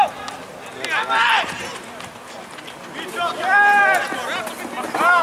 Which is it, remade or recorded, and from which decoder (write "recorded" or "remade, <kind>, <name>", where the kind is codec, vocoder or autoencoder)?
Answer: recorded